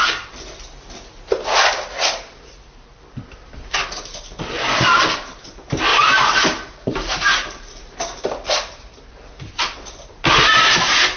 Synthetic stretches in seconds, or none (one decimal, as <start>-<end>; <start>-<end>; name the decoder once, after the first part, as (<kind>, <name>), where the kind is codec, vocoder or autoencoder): 3.9-4.6 (vocoder, BigVGAN v2); 5.9-7.9